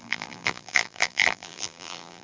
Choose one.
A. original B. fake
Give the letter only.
B